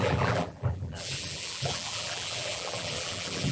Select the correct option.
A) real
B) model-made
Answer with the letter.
B